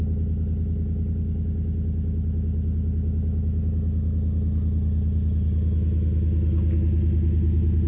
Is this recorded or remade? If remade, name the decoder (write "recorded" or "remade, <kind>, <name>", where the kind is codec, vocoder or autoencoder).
recorded